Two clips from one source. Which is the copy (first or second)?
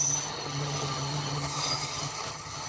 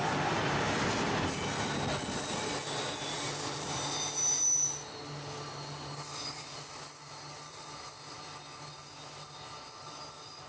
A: first